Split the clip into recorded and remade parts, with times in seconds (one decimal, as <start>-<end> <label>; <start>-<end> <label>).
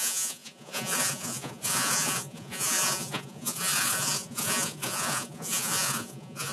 0.0-6.5 remade